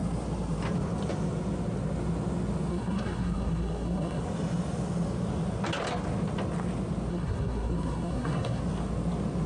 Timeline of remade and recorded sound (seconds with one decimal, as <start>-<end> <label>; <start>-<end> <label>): 0.0-2.7 recorded; 2.7-4.2 remade; 4.2-7.1 recorded; 7.1-8.6 remade; 8.6-9.5 recorded